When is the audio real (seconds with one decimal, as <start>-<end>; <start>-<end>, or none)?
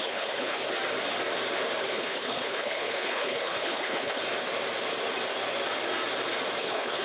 0.6-1.9; 4.2-6.6